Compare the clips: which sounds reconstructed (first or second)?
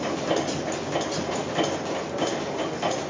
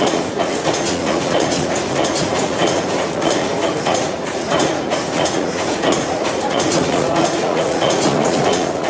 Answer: second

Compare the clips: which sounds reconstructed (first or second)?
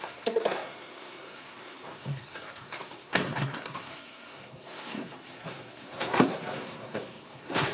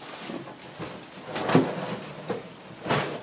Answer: first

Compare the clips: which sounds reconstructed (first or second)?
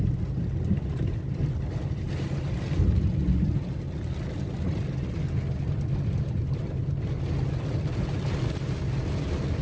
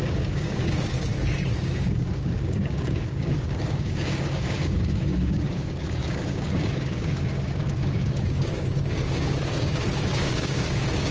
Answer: second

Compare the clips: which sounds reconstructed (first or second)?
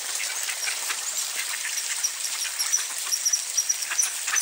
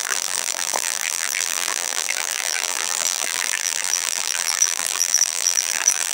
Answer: second